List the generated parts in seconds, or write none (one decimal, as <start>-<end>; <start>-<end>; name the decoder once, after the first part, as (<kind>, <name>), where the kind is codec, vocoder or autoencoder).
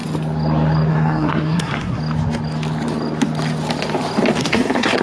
0.9-2.0 (codec, SNAC); 4.4-5.0